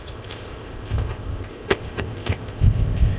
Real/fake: fake